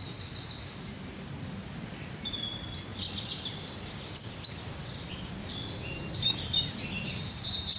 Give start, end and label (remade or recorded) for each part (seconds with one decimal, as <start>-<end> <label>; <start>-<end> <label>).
0.0-7.8 recorded